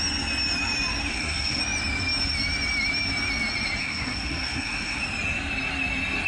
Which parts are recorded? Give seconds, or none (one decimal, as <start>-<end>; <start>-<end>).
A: 0.0-1.1; 1.6-3.8; 5.0-6.3